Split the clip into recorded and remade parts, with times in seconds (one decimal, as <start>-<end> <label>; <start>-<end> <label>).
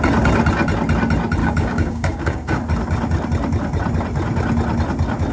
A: 0.0-1.4 recorded; 1.4-2.6 remade; 2.6-5.3 recorded